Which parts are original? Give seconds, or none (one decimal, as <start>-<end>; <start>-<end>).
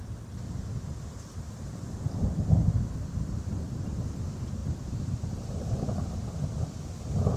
3.5-4.6; 6.1-7.4